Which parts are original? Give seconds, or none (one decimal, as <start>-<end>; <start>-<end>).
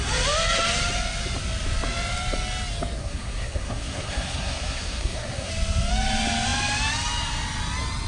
0.0-3.0; 5.5-8.1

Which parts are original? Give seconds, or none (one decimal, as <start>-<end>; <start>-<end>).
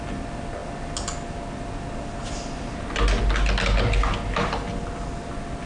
0.0-5.7